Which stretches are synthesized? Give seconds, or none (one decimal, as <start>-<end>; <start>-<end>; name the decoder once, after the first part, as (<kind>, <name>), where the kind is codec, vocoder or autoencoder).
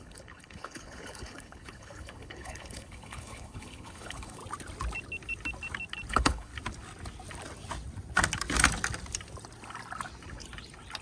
0.0-4.4 (codec, HILCodec); 6.1-6.5